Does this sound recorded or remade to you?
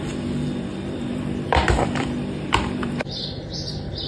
remade